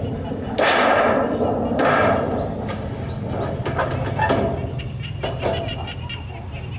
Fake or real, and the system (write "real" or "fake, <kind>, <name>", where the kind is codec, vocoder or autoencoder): real